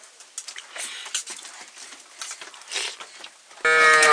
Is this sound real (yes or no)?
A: yes